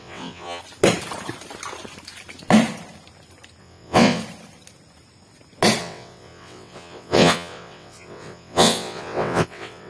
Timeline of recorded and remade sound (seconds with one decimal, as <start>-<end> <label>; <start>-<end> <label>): 0.0-0.6 remade; 0.6-3.6 recorded; 3.6-4.2 remade; 4.2-5.8 recorded; 5.8-9.9 remade